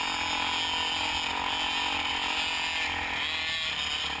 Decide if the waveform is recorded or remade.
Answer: recorded